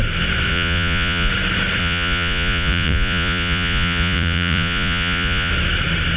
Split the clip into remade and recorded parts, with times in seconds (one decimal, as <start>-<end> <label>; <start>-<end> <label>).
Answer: 0.0-0.5 recorded; 0.5-1.3 remade; 1.3-1.8 recorded; 1.8-5.5 remade; 5.5-6.2 recorded